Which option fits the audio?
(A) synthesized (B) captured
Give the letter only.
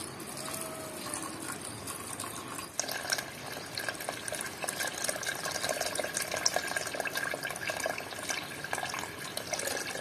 B